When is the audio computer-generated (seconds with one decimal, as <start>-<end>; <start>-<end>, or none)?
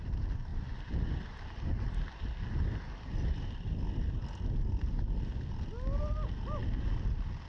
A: none